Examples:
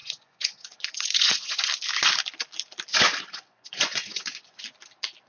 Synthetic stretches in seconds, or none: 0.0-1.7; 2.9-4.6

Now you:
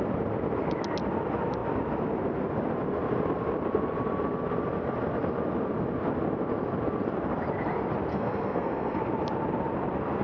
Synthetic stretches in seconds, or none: 8.1-9.0

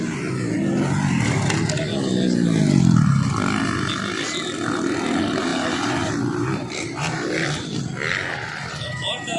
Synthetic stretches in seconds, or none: 5.5-7.8